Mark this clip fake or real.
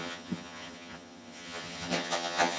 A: fake